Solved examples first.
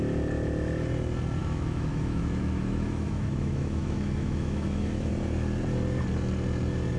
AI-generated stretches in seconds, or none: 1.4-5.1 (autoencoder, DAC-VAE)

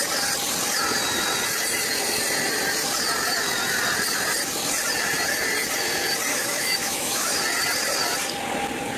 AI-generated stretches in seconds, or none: 6.3-7.4 (autoencoder, DAC-VAE)

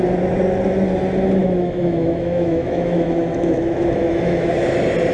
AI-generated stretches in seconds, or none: 1.4-4.5 (autoencoder, DAC-VAE)

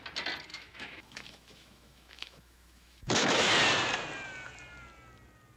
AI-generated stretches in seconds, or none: 0.5-3.5 (autoencoder, DAC-VAE)

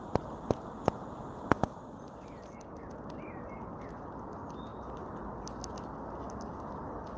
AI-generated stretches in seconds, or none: none

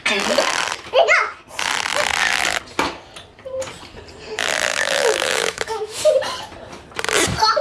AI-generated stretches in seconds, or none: 4.7-6.0 (autoencoder, DAC-VAE)

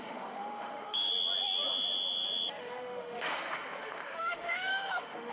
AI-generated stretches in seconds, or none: 0.0-1.1 (autoencoder, DAC-VAE); 2.6-5.3

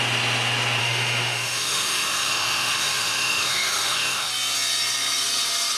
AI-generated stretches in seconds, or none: 0.8-4.3 (autoencoder, DAC-VAE)